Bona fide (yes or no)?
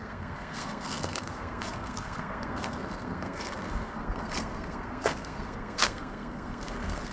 no